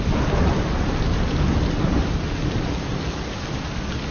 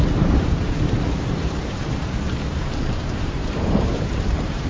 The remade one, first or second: second